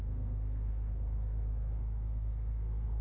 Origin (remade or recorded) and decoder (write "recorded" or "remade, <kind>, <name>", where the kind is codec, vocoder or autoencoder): remade, codec, SNAC